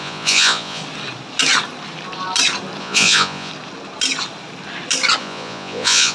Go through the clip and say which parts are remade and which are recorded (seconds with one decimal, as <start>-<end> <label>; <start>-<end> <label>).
0.0-0.8 remade; 0.8-2.8 recorded; 2.8-3.5 remade; 3.5-5.2 recorded; 5.2-6.1 remade